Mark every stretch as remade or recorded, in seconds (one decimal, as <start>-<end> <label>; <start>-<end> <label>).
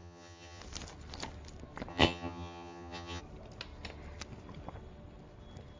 0.0-0.6 remade; 0.6-1.9 recorded; 1.9-3.2 remade; 3.2-5.8 recorded